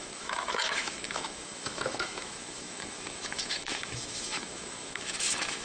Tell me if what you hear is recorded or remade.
remade